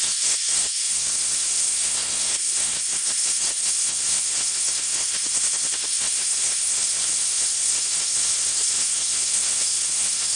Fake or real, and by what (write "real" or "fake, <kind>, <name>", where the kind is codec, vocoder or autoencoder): fake, codec, SNAC